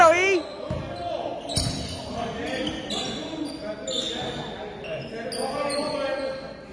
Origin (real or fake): real